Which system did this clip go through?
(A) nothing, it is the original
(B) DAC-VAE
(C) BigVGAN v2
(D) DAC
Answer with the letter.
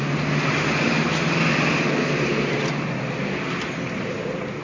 A